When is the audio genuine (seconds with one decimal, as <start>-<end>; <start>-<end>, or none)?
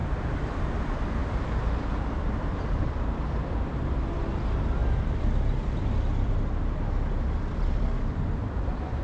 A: none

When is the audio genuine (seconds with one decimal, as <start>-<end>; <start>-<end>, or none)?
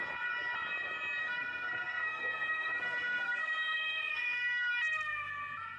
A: 0.0-1.2; 4.7-5.8